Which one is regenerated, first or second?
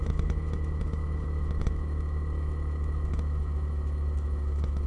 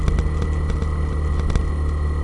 first